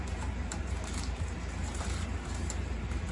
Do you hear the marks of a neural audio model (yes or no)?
yes